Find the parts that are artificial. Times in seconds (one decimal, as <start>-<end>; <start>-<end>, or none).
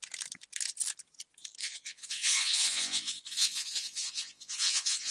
1.6-5.1